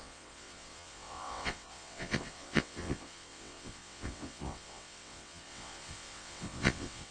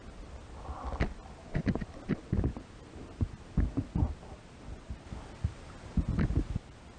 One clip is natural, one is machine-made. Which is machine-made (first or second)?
first